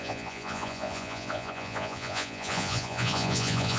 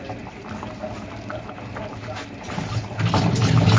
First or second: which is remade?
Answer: first